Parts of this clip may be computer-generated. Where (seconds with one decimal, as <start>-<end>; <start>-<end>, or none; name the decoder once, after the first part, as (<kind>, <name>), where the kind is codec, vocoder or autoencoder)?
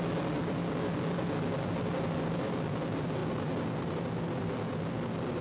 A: none